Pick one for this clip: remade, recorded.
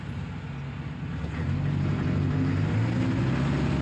recorded